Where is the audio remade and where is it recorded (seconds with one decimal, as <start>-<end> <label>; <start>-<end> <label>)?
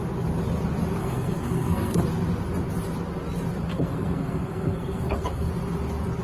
0.0-1.0 recorded; 1.0-2.0 remade; 2.0-3.7 recorded; 3.7-5.5 remade; 5.5-6.2 recorded